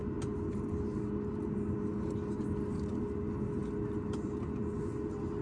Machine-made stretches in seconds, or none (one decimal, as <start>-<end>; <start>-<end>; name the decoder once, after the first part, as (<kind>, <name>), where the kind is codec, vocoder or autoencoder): none